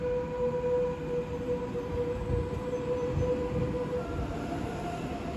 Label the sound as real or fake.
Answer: real